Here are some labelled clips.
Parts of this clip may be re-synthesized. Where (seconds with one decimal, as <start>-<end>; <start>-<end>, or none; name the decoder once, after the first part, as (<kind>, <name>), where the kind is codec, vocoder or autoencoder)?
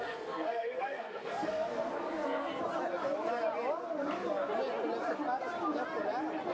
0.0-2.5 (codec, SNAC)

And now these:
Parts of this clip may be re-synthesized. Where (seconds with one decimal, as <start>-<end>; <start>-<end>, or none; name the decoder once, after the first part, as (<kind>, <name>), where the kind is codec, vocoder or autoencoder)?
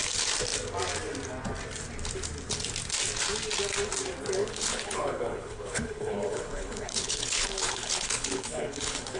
4.4-9.2 (codec, HILCodec)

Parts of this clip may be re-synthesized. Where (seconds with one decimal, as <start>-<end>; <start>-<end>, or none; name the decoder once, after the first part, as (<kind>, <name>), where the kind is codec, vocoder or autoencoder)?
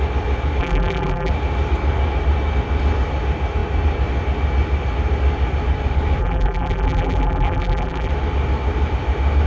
0.6-1.3 (vocoder, BigVGAN v2); 6.2-8.1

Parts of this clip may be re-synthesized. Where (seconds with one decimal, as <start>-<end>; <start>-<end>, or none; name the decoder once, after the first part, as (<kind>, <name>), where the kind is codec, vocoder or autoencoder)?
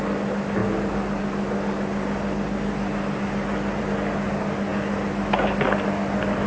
none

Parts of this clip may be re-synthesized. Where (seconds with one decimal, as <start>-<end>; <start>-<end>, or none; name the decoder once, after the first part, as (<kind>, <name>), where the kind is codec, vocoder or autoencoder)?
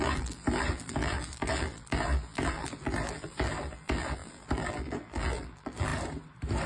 0.0-5.9 (vocoder, BigVGAN v2)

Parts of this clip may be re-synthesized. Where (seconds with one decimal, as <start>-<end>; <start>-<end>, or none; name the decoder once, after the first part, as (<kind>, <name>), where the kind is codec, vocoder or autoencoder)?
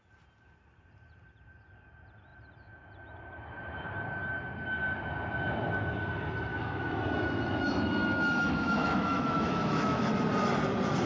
6.5-10.1 (autoencoder, DAC-VAE)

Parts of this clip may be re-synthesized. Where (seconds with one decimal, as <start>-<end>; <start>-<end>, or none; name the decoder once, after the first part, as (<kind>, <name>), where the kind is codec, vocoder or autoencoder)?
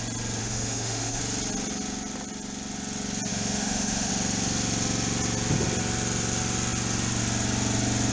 0.4-1.2 (autoencoder, DAC-VAE); 3.3-4.1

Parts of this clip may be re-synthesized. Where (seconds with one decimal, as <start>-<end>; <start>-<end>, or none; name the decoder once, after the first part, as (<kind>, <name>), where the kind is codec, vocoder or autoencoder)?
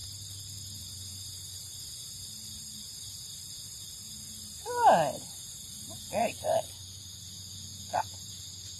0.8-2.0 (vocoder, Vocos); 5.2-8.8